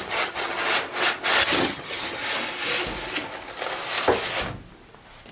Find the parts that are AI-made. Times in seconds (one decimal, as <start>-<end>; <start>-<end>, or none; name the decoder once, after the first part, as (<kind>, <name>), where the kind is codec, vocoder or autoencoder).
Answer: 0.0-0.6 (vocoder, HiFi-GAN); 1.4-2.2